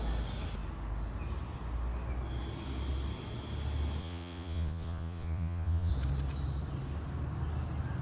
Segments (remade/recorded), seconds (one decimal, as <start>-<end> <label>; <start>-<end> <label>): 0.0-4.0 recorded; 4.0-5.9 remade; 5.9-8.0 recorded